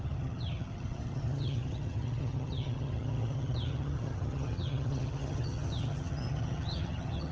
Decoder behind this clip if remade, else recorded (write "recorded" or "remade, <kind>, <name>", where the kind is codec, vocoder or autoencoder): remade, vocoder, HiFi-GAN